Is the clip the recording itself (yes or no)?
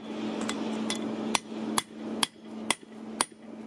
yes